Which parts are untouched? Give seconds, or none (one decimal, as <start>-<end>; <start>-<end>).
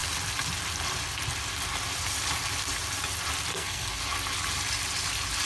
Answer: 0.0-3.5; 4.0-5.5